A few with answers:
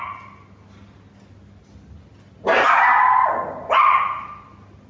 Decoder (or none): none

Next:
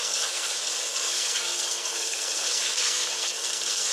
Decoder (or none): codec, SNAC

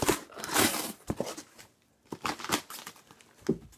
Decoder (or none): none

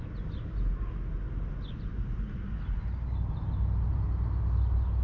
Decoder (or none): none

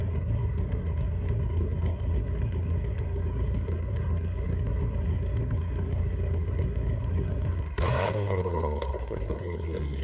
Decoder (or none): codec, SNAC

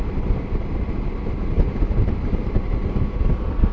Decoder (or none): none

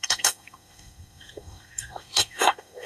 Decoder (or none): codec, SNAC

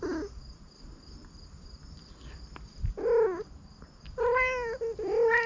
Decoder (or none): none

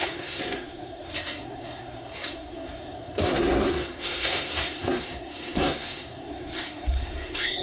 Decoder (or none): codec, SNAC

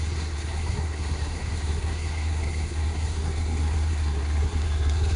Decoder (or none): codec, SNAC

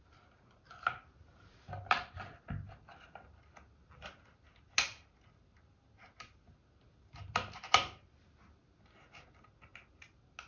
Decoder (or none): none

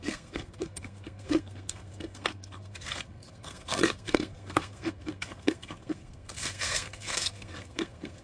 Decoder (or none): codec, SNAC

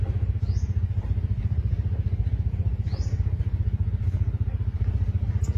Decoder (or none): none